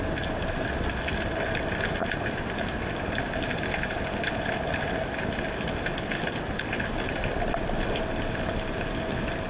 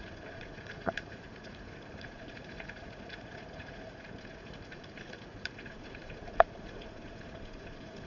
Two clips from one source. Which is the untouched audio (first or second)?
first